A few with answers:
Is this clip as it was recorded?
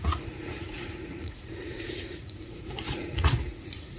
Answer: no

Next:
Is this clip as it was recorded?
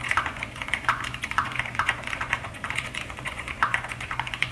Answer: no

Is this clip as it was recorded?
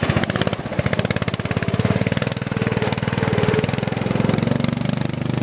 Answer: yes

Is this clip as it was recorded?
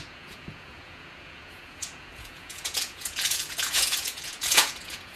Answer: no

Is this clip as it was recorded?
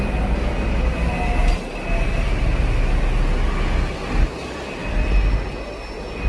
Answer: yes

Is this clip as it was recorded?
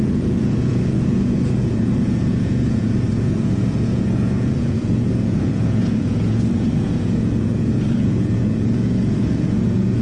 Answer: no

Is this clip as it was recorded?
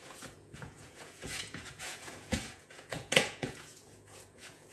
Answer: no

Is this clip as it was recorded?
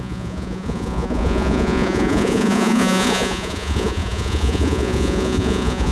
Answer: no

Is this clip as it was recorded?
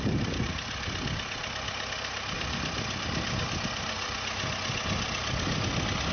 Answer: yes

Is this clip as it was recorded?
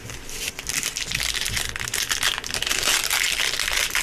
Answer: yes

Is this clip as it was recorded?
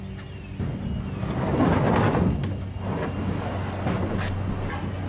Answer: yes